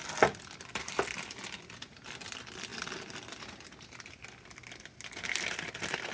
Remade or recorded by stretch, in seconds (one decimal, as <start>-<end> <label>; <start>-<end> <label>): 0.0-6.1 recorded